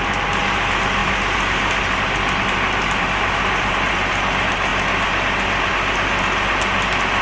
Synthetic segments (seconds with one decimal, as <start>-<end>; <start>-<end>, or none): 1.0-3.9